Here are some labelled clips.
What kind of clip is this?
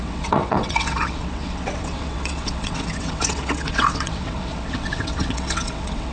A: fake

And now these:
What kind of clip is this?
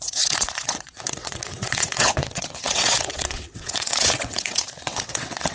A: fake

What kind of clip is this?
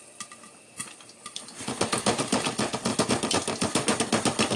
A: real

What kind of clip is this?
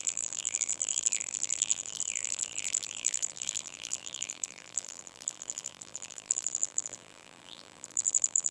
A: fake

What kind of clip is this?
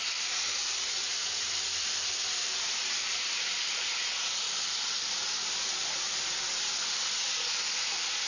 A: real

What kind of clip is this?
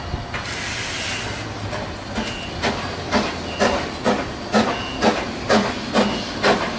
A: real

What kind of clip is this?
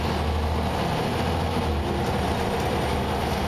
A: real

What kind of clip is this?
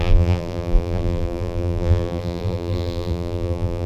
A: fake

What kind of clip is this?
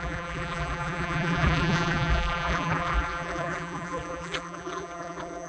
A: fake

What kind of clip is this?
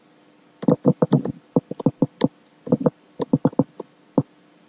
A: real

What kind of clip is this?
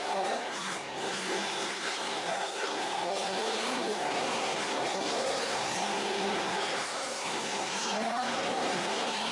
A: fake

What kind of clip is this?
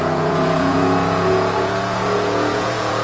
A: fake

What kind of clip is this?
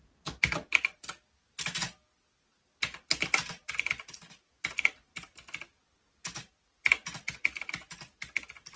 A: real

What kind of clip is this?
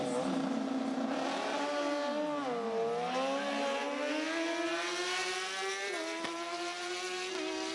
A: real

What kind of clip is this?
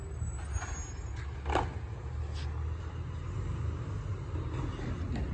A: real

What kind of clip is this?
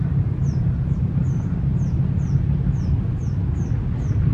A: real